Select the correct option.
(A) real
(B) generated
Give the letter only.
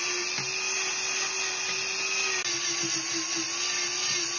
A